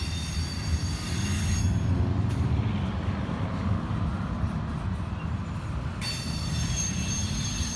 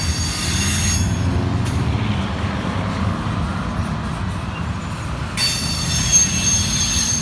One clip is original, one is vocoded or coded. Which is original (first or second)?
second